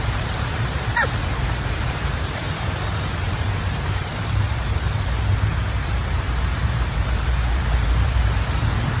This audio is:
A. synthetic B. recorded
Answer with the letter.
A